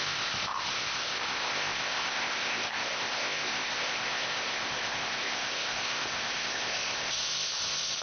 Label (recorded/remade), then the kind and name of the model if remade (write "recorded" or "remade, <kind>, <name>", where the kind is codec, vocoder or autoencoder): remade, codec, ZipCodec